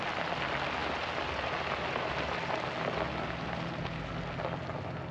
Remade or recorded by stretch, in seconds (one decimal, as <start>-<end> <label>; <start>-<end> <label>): 0.0-5.1 recorded